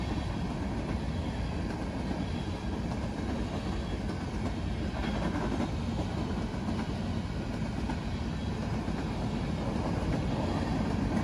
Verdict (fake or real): real